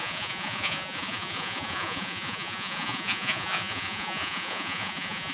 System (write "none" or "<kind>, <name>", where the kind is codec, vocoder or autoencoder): vocoder, Vocos